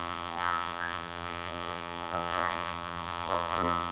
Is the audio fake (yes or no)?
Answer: yes